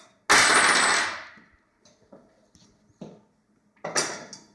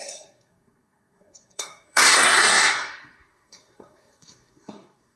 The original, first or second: first